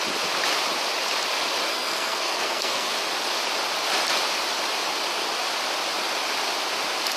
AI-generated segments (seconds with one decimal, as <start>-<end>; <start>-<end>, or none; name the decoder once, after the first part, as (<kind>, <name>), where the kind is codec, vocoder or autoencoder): 1.7-2.9 (codec, SNAC)